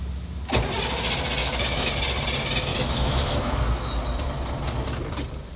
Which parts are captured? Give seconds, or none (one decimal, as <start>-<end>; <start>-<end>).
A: 0.0-1.4; 1.9-2.7; 3.6-5.6